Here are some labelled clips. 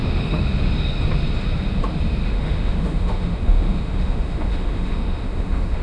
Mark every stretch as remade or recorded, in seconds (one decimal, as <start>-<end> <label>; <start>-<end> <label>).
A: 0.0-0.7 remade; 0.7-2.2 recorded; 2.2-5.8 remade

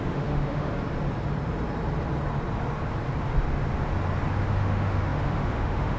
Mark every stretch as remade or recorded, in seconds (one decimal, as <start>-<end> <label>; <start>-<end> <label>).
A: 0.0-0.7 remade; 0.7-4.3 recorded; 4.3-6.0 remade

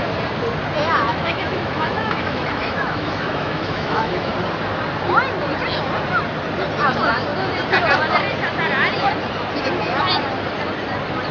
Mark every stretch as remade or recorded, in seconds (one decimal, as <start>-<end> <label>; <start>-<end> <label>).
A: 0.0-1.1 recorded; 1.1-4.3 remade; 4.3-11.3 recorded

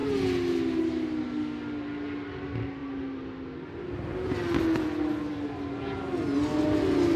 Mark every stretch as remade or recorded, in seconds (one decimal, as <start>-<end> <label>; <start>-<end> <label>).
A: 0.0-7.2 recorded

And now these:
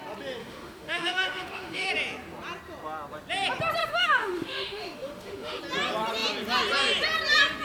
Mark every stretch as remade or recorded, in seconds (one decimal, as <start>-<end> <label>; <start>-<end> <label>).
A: 0.0-0.4 recorded; 0.4-1.9 remade; 1.9-3.8 recorded; 3.8-5.6 remade; 5.6-7.6 recorded

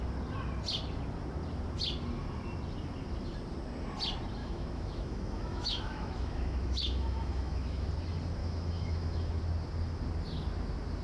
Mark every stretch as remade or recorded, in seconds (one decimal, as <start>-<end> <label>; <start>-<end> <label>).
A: 0.0-4.4 recorded; 4.4-7.9 remade; 7.9-8.4 recorded; 8.4-9.4 remade; 9.4-11.0 recorded

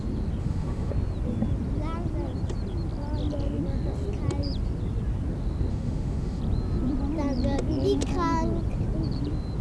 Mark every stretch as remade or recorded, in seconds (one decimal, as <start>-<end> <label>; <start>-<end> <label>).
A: 0.0-0.4 recorded; 0.4-0.9 remade; 0.9-5.7 recorded; 5.7-6.4 remade; 6.4-9.6 recorded

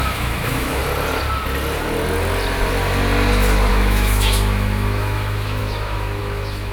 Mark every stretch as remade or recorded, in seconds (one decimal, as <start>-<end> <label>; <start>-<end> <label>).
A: 0.0-0.8 remade; 0.8-3.7 recorded; 3.7-6.7 remade